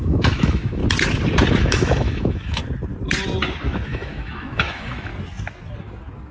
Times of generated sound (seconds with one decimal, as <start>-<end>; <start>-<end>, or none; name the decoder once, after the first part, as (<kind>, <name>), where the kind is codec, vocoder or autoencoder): 0.0-0.8 (autoencoder, DAC-VAE); 1.6-2.6; 3.9-5.1